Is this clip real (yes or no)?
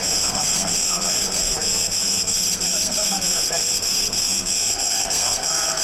no